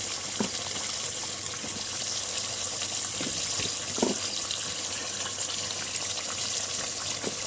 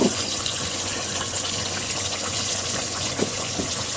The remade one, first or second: second